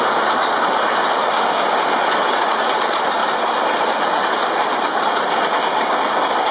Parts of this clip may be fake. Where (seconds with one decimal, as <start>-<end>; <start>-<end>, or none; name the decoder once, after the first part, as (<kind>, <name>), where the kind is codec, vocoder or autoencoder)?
none